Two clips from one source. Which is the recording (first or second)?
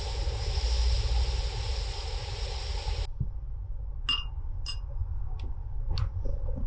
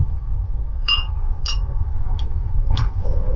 first